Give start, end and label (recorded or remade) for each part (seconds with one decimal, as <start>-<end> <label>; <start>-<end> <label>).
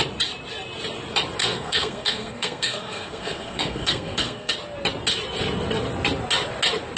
0.0-1.4 recorded; 1.4-4.5 remade; 4.5-7.0 recorded